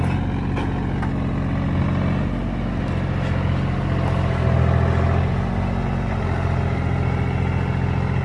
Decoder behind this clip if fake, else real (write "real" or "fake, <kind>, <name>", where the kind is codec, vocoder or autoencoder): real